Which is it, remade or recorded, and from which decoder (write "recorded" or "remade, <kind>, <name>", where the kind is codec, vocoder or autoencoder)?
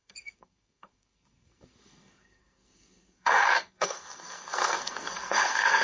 remade, codec, SNAC